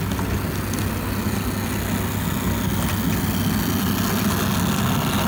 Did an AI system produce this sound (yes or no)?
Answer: no